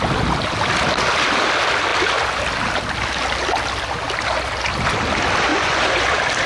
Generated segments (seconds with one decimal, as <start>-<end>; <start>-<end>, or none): 5.5-6.1